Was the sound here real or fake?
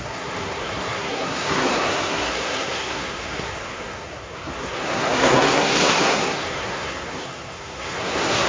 fake